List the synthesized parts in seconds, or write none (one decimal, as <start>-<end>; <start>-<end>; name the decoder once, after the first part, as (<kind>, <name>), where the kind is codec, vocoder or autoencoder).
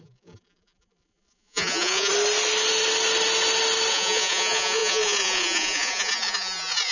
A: 0.0-2.1 (vocoder, Vocos); 3.9-6.9